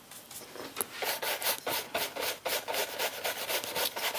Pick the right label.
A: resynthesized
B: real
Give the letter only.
B